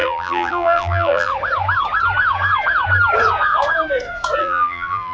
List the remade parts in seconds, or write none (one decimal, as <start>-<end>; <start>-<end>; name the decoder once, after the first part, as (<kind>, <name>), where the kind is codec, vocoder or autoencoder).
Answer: 0.0-1.3 (vocoder, BigVGAN v2); 4.4-5.1